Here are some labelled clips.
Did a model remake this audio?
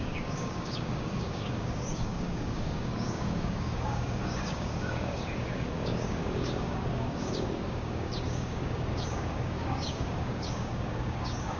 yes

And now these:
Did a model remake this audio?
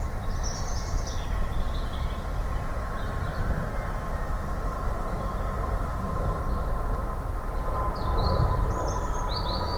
no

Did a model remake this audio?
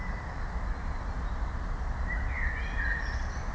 no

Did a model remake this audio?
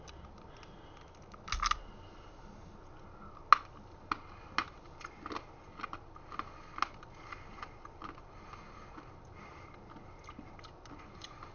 no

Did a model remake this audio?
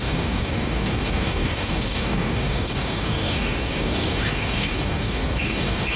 yes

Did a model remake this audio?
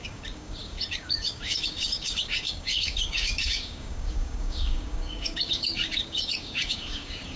yes